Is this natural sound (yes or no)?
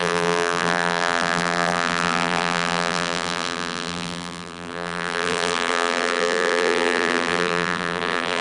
no